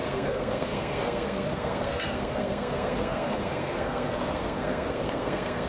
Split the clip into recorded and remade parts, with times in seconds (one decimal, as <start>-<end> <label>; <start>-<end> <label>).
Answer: 0.0-5.7 remade